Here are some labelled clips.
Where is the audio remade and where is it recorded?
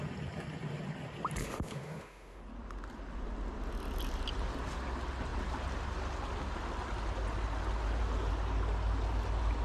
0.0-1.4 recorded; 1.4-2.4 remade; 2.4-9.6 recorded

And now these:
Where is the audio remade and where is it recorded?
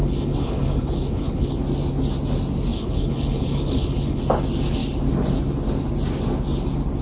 0.0-1.6 remade; 1.6-2.7 recorded; 2.7-4.2 remade; 4.2-7.0 recorded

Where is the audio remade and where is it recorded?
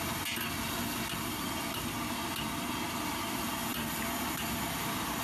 0.0-5.2 recorded